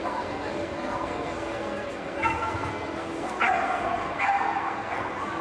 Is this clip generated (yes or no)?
yes